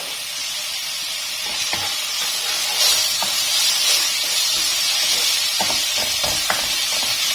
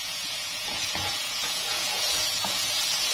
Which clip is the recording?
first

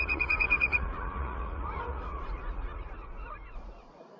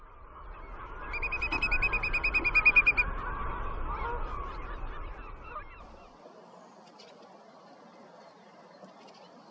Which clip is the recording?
second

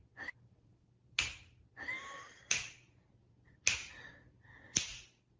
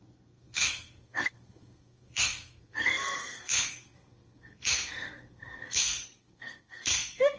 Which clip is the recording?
first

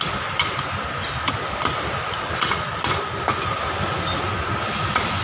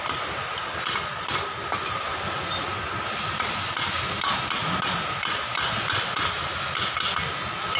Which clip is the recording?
second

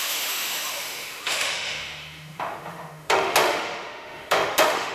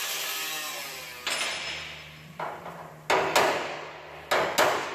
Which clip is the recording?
second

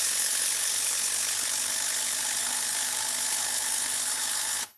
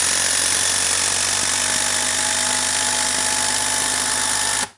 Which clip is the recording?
second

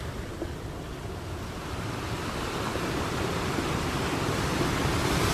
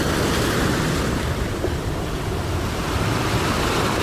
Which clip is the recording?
first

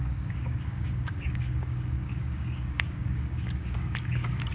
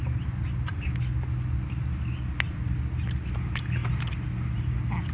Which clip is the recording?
second